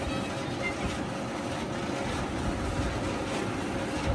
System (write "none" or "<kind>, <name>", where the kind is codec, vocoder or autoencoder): none